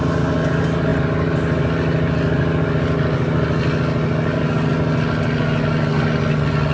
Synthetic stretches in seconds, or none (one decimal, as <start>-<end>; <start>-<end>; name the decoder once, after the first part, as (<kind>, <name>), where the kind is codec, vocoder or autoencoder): none